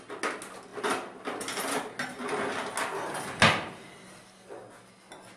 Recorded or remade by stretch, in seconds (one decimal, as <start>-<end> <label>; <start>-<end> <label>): 0.0-5.4 recorded